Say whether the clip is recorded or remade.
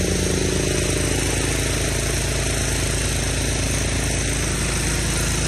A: recorded